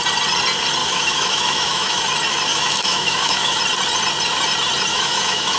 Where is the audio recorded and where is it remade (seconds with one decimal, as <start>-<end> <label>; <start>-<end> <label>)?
0.0-0.8 recorded; 0.8-2.0 remade; 2.0-2.5 recorded; 2.5-3.6 remade; 3.6-4.9 recorded; 4.9-5.6 remade